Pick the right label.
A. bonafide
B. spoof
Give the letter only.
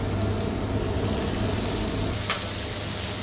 A